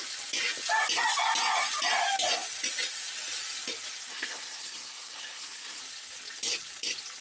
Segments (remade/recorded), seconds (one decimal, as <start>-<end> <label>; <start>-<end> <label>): 0.0-4.1 recorded; 4.1-5.8 remade; 5.8-7.2 recorded